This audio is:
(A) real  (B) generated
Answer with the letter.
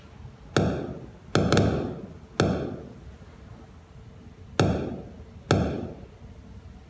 A